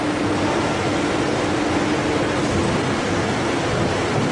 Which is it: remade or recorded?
recorded